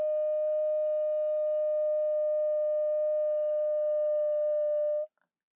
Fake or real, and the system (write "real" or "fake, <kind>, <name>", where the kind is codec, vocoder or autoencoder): real